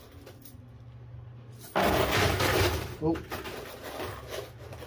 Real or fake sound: real